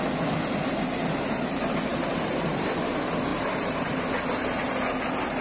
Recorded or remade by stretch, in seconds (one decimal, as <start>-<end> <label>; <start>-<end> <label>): 0.0-1.9 recorded; 1.9-2.7 remade; 2.7-3.3 recorded; 3.3-4.1 remade; 4.1-5.4 recorded